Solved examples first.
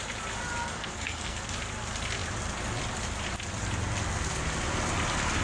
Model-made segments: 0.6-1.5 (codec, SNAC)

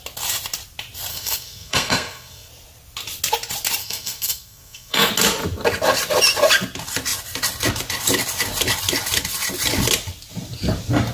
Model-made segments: 1.1-2.5 (codec, SNAC); 3.8-5.1

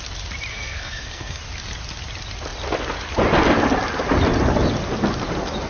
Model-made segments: 0.5-1.4 (codec, SNAC)

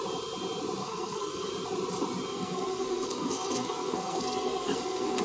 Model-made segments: 0.8-1.5 (codec, SNAC); 2.3-5.2

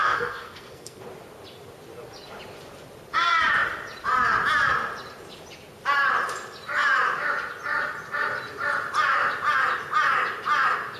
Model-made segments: 0.0-1.0 (codec, SNAC)

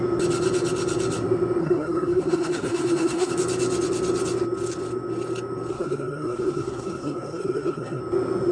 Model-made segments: 1.6-3.3 (codec, SNAC); 5.7-8.0